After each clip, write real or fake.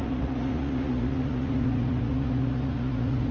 fake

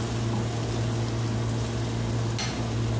real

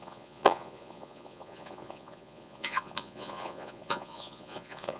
fake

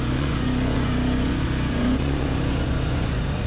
fake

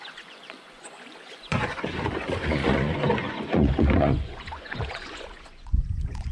fake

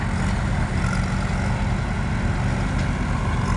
real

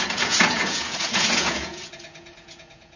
fake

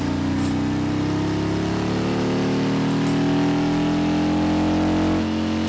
real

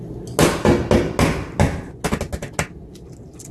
real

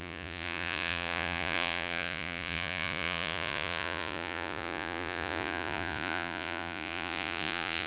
fake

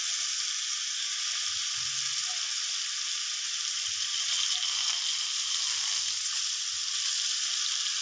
real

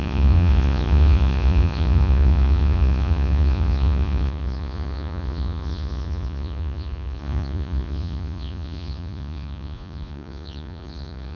fake